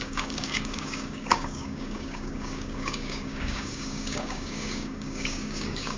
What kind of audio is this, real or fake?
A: fake